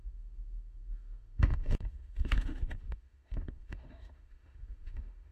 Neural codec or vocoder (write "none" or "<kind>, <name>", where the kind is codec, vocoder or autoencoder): autoencoder, DAC-VAE